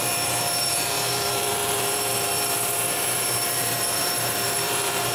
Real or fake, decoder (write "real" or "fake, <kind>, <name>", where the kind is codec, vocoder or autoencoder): fake, vocoder, BigVGAN v2